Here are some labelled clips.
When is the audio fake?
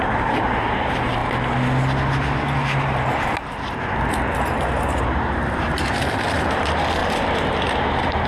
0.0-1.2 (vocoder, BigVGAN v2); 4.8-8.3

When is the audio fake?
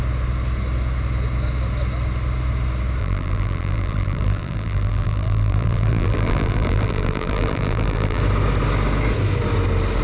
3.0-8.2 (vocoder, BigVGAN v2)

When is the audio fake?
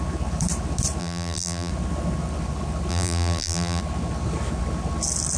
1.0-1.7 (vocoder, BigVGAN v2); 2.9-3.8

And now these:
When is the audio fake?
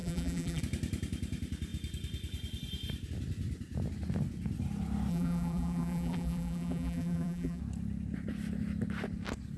0.0-0.6 (vocoder, BigVGAN v2); 5.1-7.6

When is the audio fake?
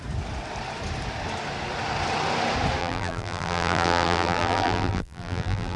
2.8-5.8 (vocoder, BigVGAN v2)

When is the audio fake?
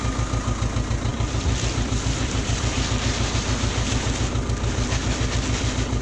1.1-2.8 (vocoder, BigVGAN v2)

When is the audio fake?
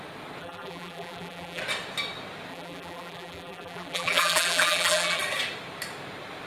0.4-1.6 (vocoder, BigVGAN v2); 2.5-5.2